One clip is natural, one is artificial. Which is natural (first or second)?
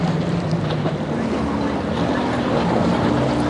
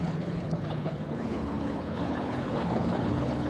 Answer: first